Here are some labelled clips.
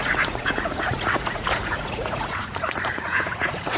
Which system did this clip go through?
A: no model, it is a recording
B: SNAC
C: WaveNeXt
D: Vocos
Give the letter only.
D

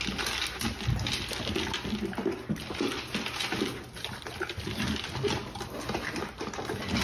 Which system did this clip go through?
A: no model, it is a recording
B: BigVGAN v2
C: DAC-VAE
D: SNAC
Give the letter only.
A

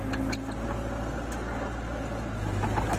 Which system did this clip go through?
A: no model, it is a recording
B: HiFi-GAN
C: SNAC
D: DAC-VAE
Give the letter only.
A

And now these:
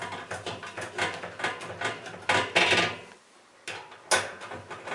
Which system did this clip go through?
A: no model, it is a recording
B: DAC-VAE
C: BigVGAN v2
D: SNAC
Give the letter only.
A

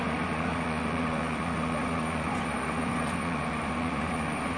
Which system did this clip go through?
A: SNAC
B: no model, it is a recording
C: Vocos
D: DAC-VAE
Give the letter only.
C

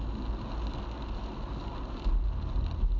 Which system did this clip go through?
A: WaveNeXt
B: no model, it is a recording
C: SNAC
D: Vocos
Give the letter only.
B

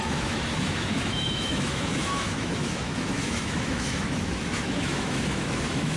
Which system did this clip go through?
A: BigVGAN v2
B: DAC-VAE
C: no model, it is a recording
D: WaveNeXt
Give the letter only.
B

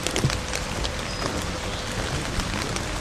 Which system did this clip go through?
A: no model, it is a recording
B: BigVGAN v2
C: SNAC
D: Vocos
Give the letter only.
A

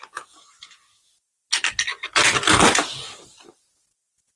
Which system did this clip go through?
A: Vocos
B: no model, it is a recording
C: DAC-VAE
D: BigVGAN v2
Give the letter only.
B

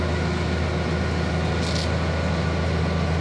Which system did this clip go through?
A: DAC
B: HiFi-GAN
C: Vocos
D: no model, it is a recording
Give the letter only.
D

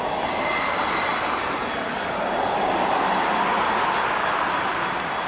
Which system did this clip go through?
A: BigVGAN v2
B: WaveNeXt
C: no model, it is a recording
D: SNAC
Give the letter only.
C